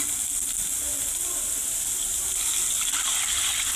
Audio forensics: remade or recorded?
recorded